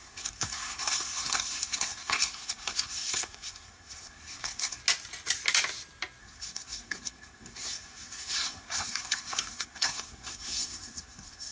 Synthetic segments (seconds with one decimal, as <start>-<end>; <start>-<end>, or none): 0.0-4.8; 6.2-11.5